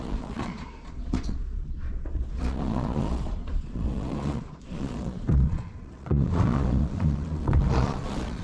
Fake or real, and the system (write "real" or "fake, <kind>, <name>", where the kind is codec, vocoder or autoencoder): fake, vocoder, Vocos